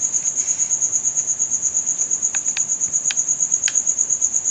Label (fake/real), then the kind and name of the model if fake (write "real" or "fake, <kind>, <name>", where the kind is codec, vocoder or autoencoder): real